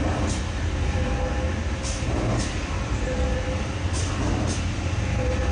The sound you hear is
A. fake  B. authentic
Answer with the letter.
B